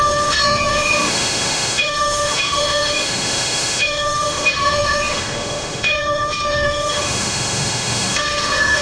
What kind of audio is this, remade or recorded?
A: remade